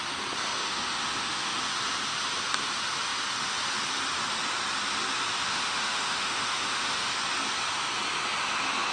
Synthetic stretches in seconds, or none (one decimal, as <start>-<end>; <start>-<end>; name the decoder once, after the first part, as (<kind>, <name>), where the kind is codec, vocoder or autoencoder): 0.6-1.6 (autoencoder, DAC-VAE); 5.5-7.1